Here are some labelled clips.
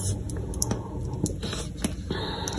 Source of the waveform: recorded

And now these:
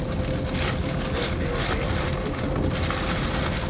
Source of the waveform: recorded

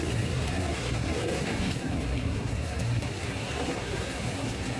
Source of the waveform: remade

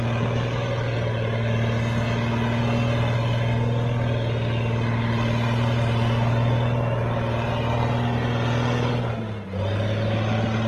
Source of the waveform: recorded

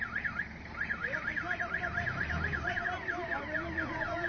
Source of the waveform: recorded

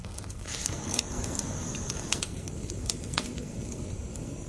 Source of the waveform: remade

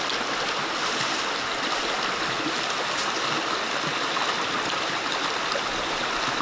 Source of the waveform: recorded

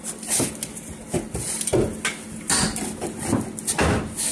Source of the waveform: recorded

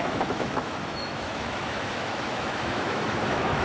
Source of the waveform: remade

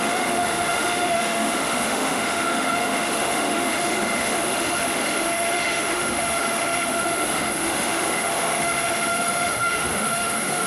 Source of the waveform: remade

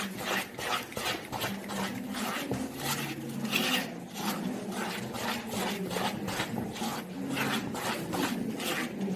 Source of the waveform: recorded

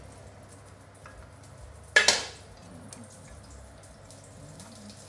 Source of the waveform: recorded